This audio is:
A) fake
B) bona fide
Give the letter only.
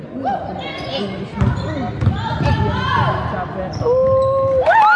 B